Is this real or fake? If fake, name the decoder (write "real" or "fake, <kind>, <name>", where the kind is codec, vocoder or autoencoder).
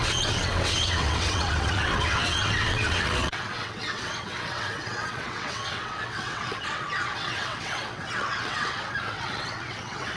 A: fake, vocoder, WaveNeXt